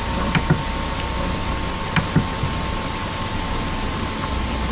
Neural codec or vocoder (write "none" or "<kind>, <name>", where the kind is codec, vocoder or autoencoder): none